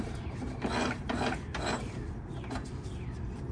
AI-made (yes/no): no